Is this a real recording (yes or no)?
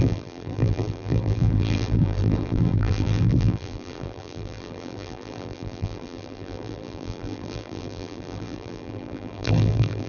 no